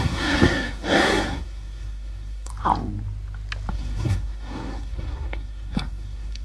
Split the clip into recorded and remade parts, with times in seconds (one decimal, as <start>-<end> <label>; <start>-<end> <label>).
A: 0.0-2.5 remade; 2.5-3.7 recorded; 3.7-6.4 remade